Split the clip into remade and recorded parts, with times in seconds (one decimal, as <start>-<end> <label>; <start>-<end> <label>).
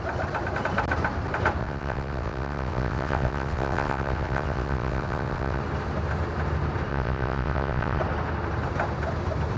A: 0.0-1.6 recorded; 1.6-5.6 remade; 5.6-6.9 recorded; 6.9-8.0 remade; 8.0-9.6 recorded